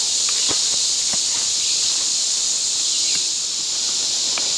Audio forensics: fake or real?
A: real